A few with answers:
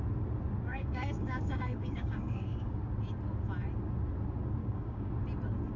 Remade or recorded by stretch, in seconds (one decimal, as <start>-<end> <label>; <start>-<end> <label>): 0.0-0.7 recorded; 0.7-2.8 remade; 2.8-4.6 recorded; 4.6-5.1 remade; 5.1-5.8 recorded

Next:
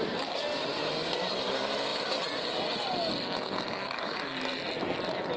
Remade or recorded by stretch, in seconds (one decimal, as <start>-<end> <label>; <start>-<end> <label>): 0.0-5.4 recorded

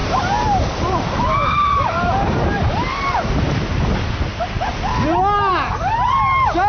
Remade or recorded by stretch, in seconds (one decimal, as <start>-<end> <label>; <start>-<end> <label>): 0.0-3.3 remade; 3.3-6.7 recorded

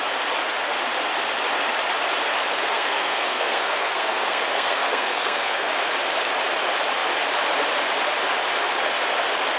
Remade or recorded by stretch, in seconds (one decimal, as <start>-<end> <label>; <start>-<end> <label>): 0.0-2.5 recorded; 2.5-5.7 remade; 5.7-9.6 recorded

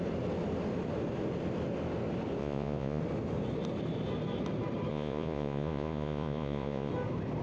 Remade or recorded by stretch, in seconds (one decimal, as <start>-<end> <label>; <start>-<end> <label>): 0.0-2.4 recorded; 2.4-3.0 remade; 3.0-4.9 recorded; 4.9-6.9 remade; 6.9-7.4 recorded